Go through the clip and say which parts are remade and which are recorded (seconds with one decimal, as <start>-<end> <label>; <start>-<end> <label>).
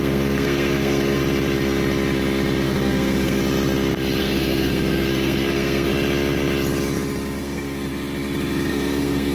0.0-1.2 remade; 1.2-2.6 recorded; 2.6-3.4 remade; 3.4-4.2 recorded; 4.2-5.9 remade; 5.9-7.4 recorded; 7.4-7.9 remade; 7.9-8.7 recorded; 8.7-9.3 remade